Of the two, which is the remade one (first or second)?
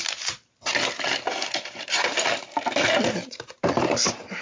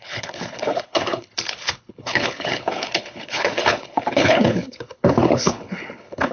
second